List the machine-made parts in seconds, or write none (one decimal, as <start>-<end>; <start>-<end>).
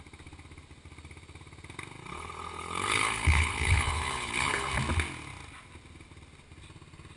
2.0-4.7